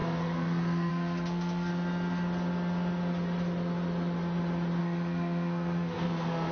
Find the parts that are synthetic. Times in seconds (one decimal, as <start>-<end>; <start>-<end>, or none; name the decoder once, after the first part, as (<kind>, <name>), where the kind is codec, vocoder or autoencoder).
0.0-1.7 (codec, SNAC); 4.8-6.5